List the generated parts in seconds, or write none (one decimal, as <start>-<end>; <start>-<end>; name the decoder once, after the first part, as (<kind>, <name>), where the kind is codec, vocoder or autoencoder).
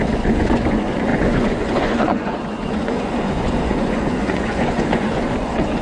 0.0-5.8 (vocoder, Vocos)